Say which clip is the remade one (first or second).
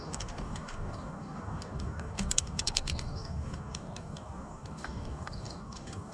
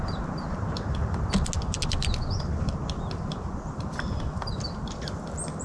first